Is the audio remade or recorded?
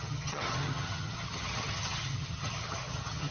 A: remade